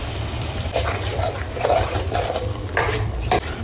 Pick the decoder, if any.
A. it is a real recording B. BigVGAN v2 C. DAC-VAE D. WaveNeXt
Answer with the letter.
B